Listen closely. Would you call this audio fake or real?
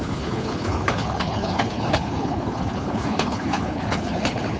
fake